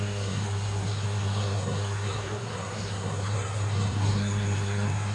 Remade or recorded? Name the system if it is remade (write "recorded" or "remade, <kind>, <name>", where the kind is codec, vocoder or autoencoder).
remade, codec, SNAC